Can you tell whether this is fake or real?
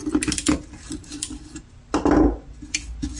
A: real